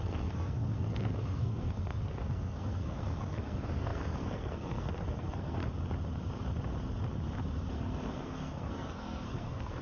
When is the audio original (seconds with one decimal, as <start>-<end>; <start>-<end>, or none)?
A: 5.6-7.7